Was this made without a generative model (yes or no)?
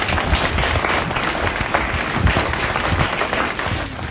yes